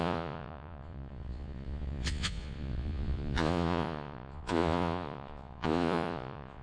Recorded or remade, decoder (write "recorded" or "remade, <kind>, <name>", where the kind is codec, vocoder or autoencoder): remade, vocoder, Vocos